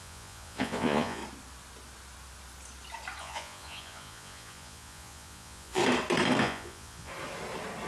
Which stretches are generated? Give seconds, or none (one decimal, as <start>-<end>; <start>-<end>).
0.0-1.2; 3.2-5.8; 6.4-7.1